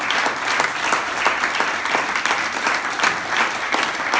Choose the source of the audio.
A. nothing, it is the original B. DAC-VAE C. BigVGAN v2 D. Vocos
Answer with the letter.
A